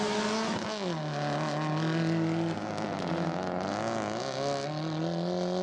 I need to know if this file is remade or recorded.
recorded